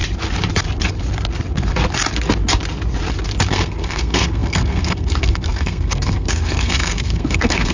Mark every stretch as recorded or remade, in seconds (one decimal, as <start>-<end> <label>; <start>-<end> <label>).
0.0-3.5 recorded; 3.5-7.7 remade